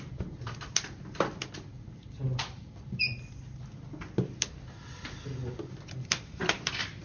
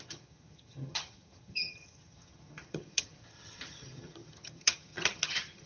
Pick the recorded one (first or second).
first